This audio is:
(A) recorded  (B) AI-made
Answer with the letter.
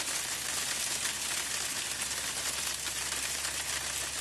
A